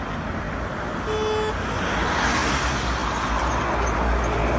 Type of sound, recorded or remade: recorded